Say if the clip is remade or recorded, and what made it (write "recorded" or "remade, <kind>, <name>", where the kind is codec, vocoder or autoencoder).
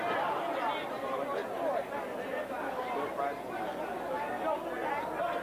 recorded